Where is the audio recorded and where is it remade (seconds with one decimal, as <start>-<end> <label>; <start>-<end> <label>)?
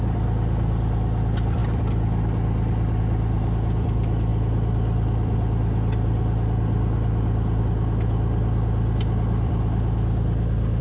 0.0-10.8 recorded